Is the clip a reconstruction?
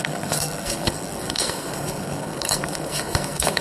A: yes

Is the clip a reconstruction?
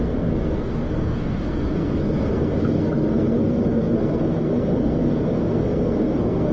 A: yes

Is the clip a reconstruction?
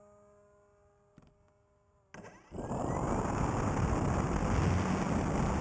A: no